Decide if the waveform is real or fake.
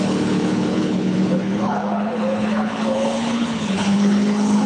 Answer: fake